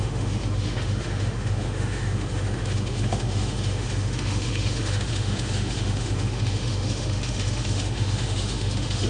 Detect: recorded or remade remade